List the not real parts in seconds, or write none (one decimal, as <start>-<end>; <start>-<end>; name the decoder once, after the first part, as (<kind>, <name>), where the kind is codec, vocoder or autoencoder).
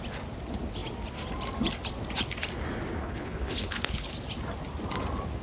3.0-4.1 (codec, HILCodec)